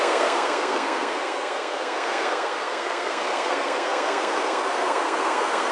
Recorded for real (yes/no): no